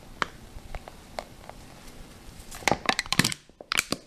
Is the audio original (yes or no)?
no